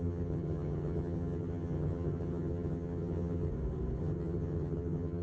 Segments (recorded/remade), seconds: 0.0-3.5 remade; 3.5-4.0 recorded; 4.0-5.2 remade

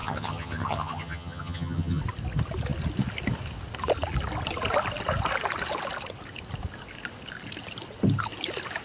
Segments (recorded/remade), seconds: 0.0-2.0 remade; 2.0-8.8 recorded

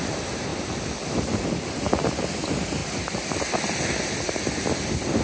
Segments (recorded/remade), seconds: 0.0-5.2 recorded

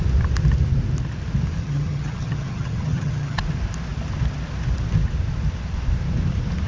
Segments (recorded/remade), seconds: 0.0-1.6 recorded; 1.6-3.4 remade; 3.4-6.7 recorded

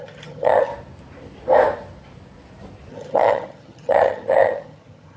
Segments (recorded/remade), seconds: 0.0-0.7 remade; 0.7-2.9 recorded; 2.9-5.2 remade